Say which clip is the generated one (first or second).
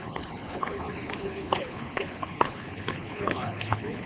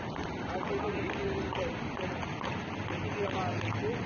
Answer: first